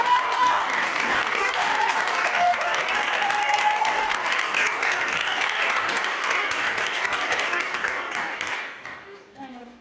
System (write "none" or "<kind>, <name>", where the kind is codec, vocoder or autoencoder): codec, DAC